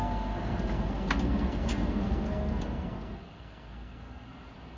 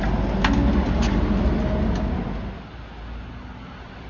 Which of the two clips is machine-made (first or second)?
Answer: first